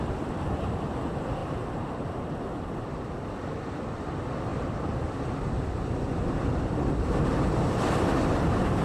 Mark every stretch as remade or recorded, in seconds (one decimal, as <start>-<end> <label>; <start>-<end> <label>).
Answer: 0.0-4.5 recorded; 4.5-5.0 remade; 5.0-8.8 recorded